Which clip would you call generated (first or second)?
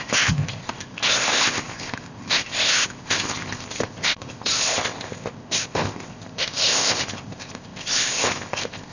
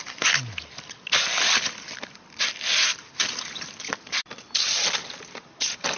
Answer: first